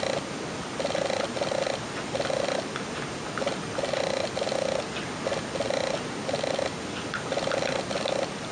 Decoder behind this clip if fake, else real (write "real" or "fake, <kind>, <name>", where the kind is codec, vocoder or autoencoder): real